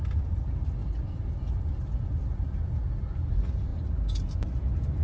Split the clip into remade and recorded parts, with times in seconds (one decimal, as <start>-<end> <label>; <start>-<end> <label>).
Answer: 0.0-5.0 recorded